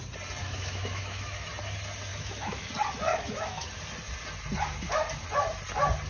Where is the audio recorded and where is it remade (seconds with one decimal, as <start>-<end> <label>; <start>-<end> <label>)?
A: 0.0-0.4 recorded; 0.4-1.5 remade; 1.5-2.1 recorded; 2.1-2.7 remade; 2.7-3.1 recorded; 3.1-3.7 remade; 3.7-6.1 recorded